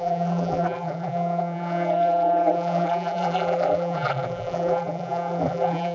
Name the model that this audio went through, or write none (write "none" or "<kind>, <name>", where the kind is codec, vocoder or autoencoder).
vocoder, BigVGAN v2